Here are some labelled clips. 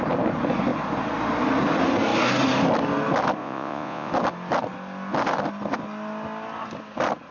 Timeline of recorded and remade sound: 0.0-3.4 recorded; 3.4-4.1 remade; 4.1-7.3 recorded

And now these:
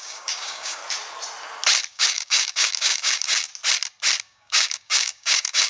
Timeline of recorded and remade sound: 0.0-0.8 remade; 0.8-1.9 recorded; 1.9-3.5 remade; 3.5-4.2 recorded; 4.2-5.7 remade